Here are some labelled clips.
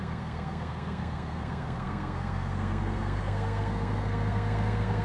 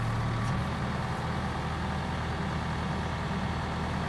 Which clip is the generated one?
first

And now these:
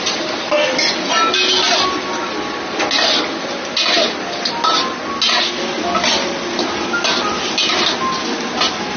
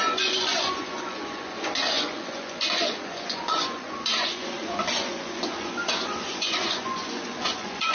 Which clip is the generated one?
second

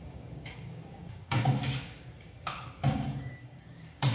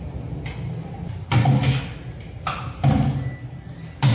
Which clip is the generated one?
first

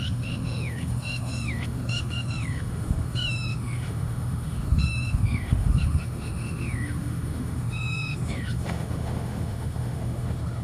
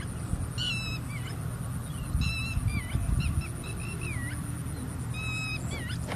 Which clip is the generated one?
first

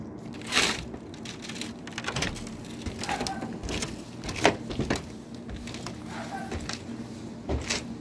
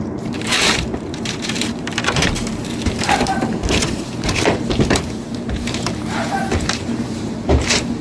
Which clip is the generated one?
second